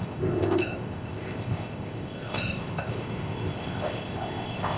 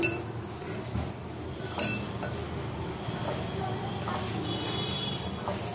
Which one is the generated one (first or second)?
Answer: first